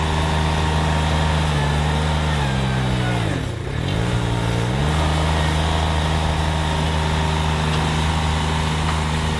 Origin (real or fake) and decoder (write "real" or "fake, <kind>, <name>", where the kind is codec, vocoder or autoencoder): real